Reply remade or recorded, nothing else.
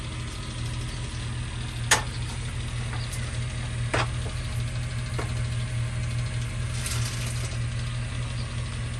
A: recorded